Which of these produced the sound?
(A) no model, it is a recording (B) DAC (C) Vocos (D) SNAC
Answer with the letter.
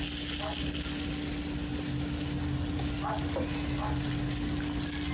A